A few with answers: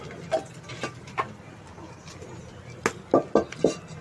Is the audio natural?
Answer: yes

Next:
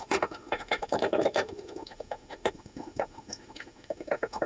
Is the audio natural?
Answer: no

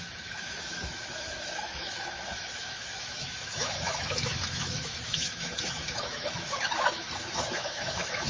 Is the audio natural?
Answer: no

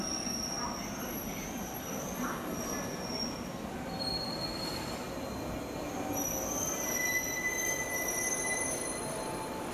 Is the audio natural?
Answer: yes